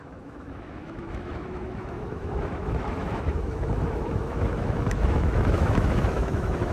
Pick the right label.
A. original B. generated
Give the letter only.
B